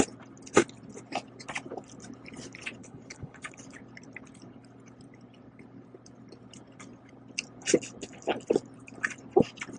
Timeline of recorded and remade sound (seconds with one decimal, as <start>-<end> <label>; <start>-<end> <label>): 0.0-2.8 recorded; 2.8-3.6 remade; 3.6-9.8 recorded